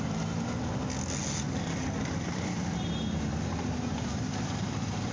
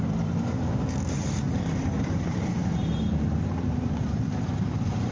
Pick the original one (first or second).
first